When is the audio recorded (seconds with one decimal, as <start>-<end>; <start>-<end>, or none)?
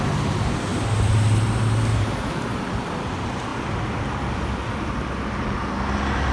0.0-6.3